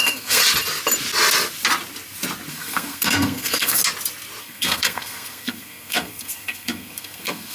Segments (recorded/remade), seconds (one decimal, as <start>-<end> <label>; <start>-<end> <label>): 0.0-0.4 remade; 0.4-2.5 recorded; 2.5-3.8 remade; 3.8-4.4 recorded; 4.4-7.5 remade